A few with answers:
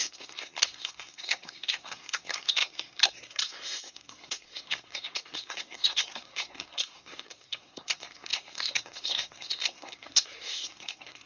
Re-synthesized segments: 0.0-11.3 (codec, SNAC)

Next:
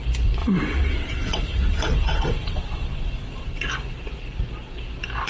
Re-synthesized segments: 0.4-3.6 (vocoder, WaveNeXt)